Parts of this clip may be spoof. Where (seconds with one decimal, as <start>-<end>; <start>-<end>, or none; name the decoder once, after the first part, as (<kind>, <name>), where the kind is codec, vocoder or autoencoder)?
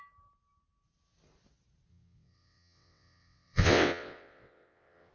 1.9-5.1 (vocoder, WaveNeXt)